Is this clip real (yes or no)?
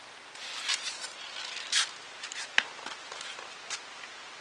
yes